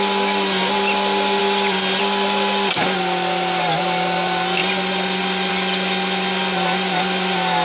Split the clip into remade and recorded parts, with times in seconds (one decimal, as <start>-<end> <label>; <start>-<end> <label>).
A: 0.0-7.6 recorded